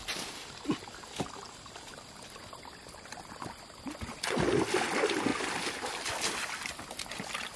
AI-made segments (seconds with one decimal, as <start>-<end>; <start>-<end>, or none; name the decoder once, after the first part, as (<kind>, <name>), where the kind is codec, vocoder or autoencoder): none